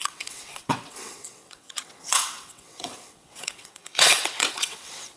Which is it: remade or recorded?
remade